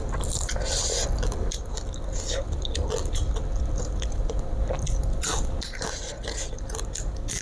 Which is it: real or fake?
real